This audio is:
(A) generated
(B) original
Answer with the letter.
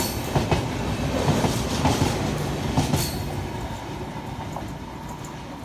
B